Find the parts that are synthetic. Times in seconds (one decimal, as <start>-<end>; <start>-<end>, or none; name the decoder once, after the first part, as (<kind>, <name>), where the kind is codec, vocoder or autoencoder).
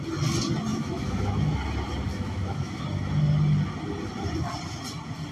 0.7-1.6 (autoencoder, DAC-VAE); 2.1-2.8